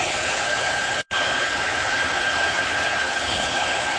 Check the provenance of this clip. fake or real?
fake